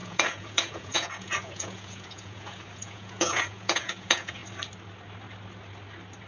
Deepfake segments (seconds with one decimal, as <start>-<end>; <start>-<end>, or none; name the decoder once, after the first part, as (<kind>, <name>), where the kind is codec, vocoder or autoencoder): 0.0-4.4 (vocoder, Vocos)